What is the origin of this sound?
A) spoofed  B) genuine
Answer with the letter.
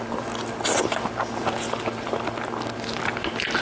B